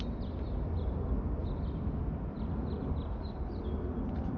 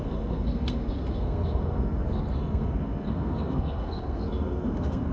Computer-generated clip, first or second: second